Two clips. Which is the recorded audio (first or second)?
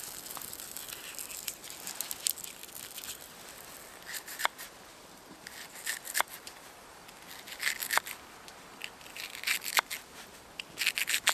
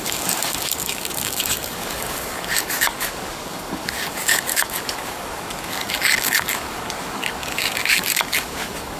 first